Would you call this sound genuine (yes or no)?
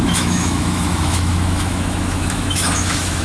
no